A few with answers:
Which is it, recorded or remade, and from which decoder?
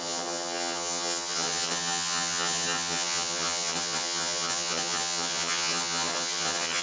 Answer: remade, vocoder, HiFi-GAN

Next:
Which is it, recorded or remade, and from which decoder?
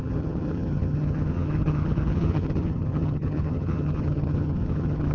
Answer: remade, vocoder, HiFi-GAN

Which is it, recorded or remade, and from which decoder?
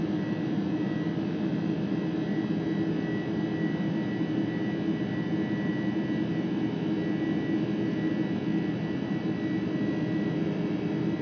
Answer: recorded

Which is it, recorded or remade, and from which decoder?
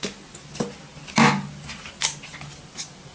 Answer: recorded